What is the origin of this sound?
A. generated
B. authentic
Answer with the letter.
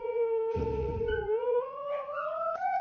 A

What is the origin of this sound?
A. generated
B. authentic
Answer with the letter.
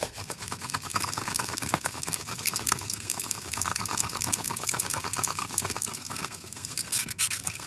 A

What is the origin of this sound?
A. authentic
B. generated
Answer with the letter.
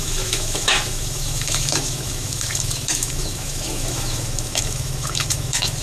B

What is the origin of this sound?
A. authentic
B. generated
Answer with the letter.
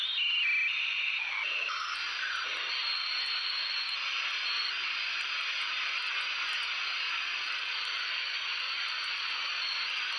A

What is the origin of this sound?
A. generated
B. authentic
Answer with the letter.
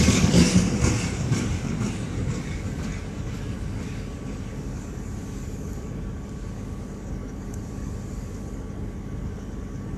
A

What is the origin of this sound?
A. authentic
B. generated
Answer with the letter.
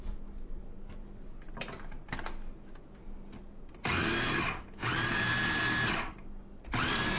A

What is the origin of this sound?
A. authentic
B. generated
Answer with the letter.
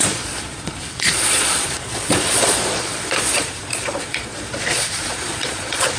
B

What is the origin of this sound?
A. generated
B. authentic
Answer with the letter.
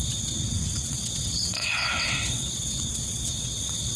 A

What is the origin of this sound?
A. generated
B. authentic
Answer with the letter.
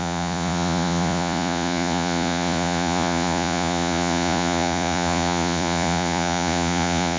A